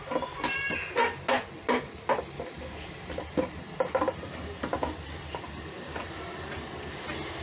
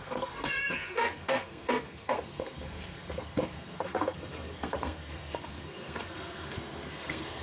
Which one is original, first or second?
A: first